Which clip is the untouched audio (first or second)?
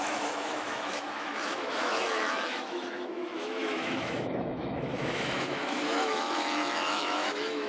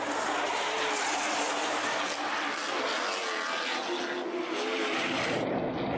second